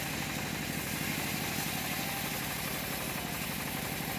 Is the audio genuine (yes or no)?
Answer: yes